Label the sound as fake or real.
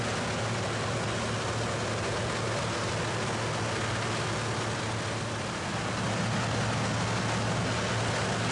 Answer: real